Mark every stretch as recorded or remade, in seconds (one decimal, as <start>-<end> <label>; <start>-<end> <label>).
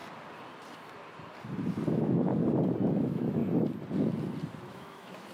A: 0.0-1.9 recorded; 1.9-2.3 remade; 2.3-2.9 recorded; 2.9-3.4 remade; 3.4-4.6 recorded; 4.6-5.3 remade